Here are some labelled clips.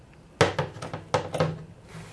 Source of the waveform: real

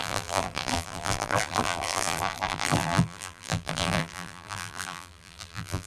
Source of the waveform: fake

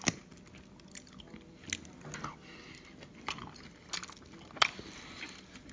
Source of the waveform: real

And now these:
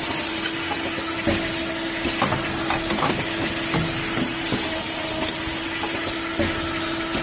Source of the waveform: real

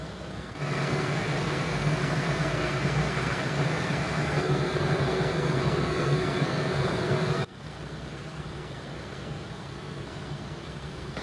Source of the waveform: fake